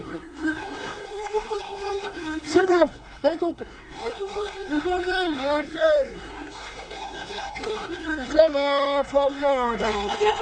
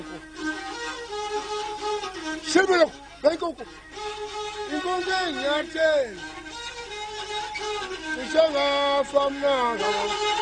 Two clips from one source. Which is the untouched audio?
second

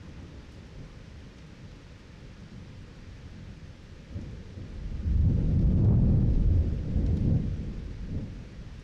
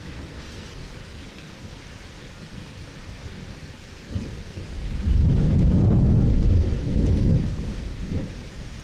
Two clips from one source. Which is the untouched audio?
first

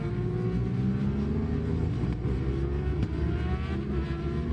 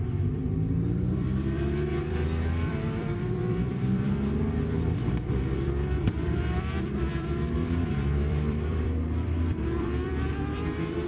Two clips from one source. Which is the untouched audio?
first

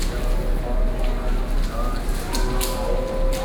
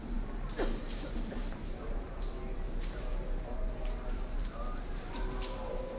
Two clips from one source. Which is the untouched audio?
first